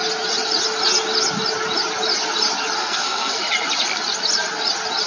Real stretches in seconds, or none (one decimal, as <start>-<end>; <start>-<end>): 0.0-2.8; 3.4-5.1